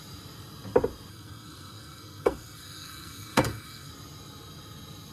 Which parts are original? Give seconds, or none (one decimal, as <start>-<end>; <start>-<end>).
0.0-1.1; 3.9-5.1